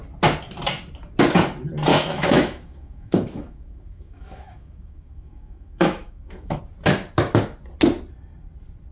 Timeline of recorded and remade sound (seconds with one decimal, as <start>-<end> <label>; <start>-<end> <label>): 0.0-1.9 recorded; 1.9-6.6 remade; 6.6-8.9 recorded

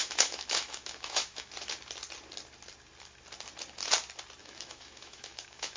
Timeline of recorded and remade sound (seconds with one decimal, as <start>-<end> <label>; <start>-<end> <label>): 0.0-1.5 remade; 1.5-4.4 recorded; 4.4-5.8 remade

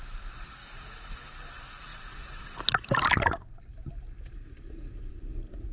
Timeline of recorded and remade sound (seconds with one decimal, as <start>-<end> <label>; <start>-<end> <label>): 0.0-0.6 recorded; 0.6-1.3 remade; 1.3-5.7 recorded

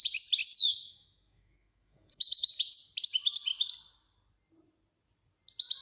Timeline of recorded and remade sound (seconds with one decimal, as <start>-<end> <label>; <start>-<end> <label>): 0.0-0.8 recorded; 0.8-2.5 remade; 2.5-5.8 recorded